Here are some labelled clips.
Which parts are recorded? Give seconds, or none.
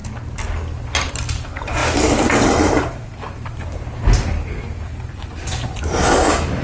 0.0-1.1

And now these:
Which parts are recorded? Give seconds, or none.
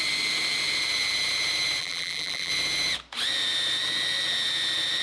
0.0-1.8; 2.5-5.0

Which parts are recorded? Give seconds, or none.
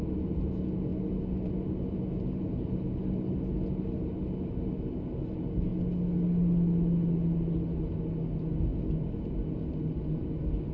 0.0-10.7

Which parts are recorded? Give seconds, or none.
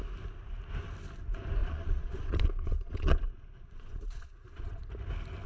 0.0-1.6; 4.9-5.5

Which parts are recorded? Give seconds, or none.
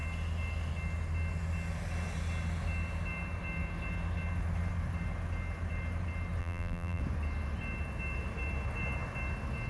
0.0-6.4; 7.0-9.7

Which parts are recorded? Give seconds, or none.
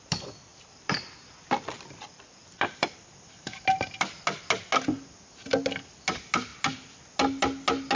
0.0-0.5; 3.0-8.0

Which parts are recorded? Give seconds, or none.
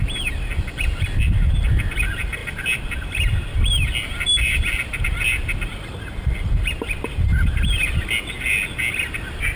0.0-9.6